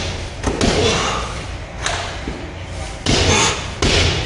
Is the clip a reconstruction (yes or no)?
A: no